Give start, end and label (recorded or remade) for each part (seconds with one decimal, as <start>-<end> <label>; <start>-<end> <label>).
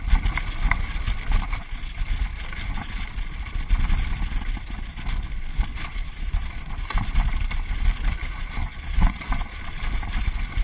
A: 0.0-5.7 recorded; 5.7-6.7 remade; 6.7-8.7 recorded; 8.7-9.6 remade; 9.6-10.6 recorded